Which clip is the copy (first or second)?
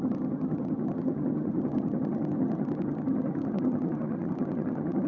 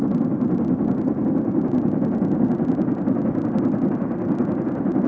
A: first